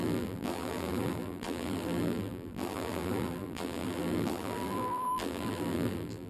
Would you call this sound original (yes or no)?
no